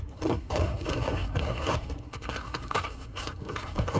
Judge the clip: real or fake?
fake